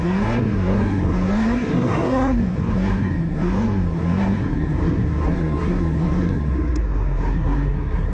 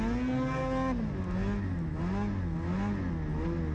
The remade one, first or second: first